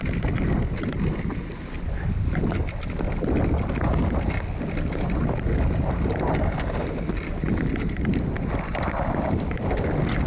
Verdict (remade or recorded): recorded